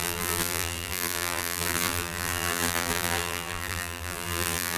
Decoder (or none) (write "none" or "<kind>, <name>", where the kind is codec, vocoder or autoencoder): vocoder, BigVGAN v2